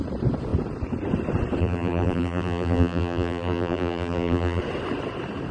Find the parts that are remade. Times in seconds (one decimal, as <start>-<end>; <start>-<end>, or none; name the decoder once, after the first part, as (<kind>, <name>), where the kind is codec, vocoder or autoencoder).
1.6-4.6 (vocoder, BigVGAN v2)